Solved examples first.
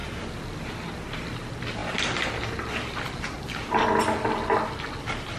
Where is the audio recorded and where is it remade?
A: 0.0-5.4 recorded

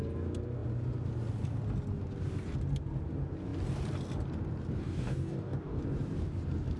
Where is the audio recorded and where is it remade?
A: 0.0-4.8 recorded; 4.8-5.8 remade; 5.8-6.8 recorded

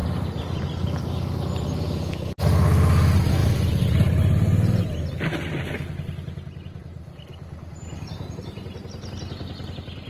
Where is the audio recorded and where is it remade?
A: 0.0-3.4 recorded; 3.4-4.8 remade; 4.8-6.8 recorded; 6.8-8.6 remade; 8.6-10.1 recorded

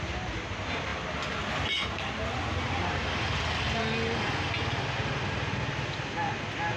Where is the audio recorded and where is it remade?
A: 0.0-6.8 recorded